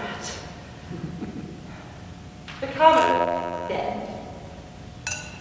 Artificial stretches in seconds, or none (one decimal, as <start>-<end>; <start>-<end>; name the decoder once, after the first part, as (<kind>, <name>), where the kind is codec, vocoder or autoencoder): 3.0-3.7 (vocoder, BigVGAN v2)